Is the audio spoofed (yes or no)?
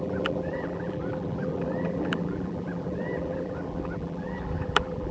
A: yes